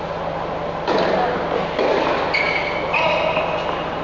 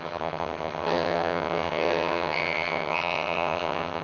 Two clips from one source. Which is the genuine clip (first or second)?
first